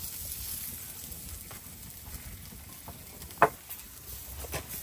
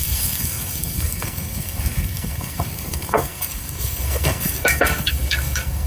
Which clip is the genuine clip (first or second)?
first